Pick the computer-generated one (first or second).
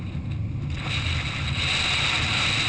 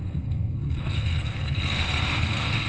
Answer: second